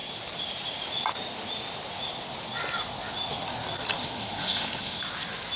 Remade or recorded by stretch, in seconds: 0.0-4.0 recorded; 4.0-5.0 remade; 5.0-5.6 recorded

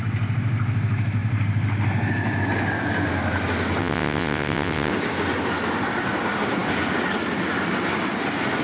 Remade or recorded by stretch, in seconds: 0.0-3.8 recorded; 3.8-4.9 remade; 4.9-8.6 recorded